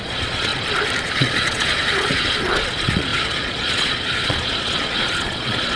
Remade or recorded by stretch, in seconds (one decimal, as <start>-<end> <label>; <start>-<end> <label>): 0.0-0.5 remade; 0.5-1.0 recorded; 1.0-5.8 remade